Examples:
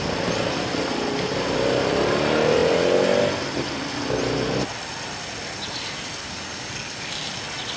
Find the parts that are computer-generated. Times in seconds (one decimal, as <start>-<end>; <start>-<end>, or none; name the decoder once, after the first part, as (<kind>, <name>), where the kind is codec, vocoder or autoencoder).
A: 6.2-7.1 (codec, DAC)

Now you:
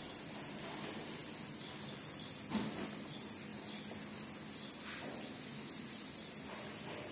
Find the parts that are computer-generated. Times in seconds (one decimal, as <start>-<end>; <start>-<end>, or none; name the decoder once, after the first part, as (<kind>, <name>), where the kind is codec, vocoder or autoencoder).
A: none

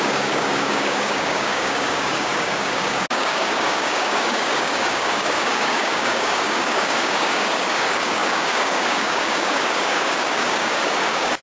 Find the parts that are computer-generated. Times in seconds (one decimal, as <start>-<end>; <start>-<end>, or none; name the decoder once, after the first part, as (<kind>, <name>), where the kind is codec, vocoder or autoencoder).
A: 0.0-11.4 (codec, DAC)

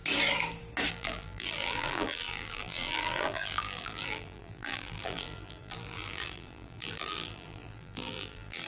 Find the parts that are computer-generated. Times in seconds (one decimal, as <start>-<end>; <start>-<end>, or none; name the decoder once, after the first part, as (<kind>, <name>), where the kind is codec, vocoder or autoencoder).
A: 0.9-8.7 (vocoder, BigVGAN v2)